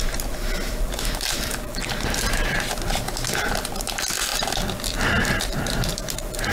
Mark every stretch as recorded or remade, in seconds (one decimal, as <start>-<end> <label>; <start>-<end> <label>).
0.0-6.5 recorded